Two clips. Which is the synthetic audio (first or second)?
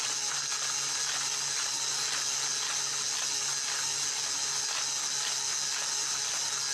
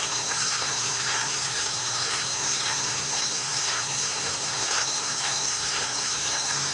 second